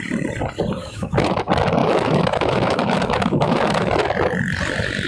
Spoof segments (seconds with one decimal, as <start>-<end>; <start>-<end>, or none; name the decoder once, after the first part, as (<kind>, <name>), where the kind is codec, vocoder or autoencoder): 0.8-1.4 (autoencoder, DAC-VAE); 1.8-3.9